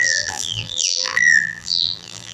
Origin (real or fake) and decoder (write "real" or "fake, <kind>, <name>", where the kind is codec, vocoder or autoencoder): fake, vocoder, BigVGAN v2